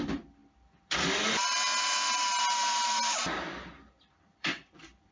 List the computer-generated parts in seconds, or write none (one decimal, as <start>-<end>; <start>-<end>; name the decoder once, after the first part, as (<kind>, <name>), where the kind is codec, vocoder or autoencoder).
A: 0.0-0.4 (vocoder, BigVGAN v2); 2.4-3.2; 4.0-5.1